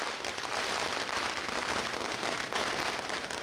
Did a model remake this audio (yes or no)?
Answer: no